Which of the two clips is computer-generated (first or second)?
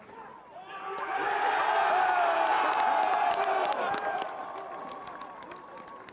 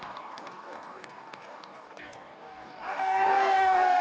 second